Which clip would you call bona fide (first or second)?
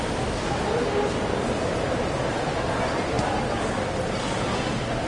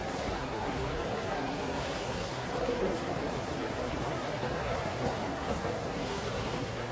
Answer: first